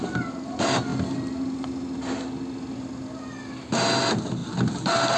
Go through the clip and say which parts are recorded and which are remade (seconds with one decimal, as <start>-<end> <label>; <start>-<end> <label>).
0.0-5.2 recorded